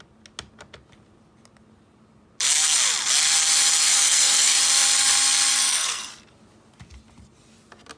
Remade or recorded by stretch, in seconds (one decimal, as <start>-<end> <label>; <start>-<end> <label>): 0.0-3.8 recorded; 3.8-4.6 remade; 4.6-5.5 recorded; 5.5-6.1 remade; 6.1-8.0 recorded